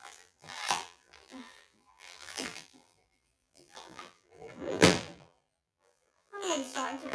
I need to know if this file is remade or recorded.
remade